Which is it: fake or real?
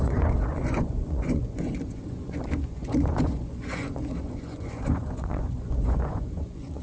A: fake